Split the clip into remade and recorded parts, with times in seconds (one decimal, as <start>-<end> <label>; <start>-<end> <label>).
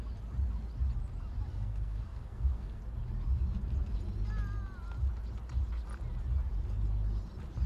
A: 0.0-1.5 recorded; 1.5-2.8 remade; 2.8-7.7 recorded